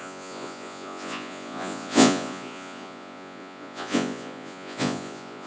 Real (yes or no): no